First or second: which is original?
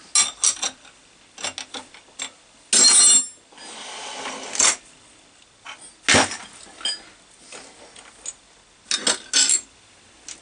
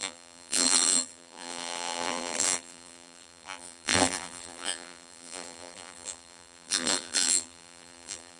first